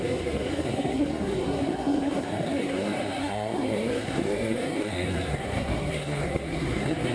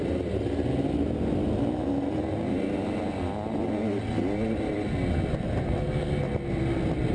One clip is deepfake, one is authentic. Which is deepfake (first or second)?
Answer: first